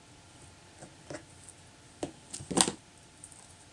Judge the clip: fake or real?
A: real